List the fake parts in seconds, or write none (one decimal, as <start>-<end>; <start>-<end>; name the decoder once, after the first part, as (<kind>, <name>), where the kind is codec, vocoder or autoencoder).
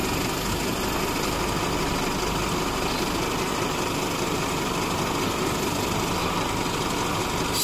none